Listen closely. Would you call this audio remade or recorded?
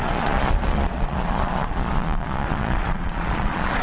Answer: remade